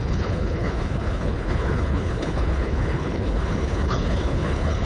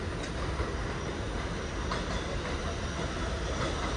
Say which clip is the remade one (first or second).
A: first